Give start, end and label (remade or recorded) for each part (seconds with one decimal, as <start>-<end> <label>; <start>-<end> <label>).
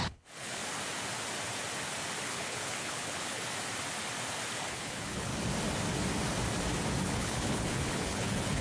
0.0-0.6 remade; 0.6-2.2 recorded; 2.2-3.4 remade; 3.4-4.5 recorded; 4.5-5.3 remade; 5.3-7.0 recorded; 7.0-8.6 remade